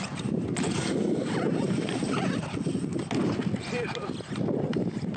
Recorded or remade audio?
recorded